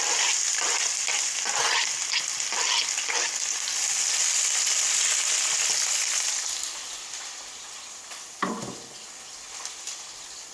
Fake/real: real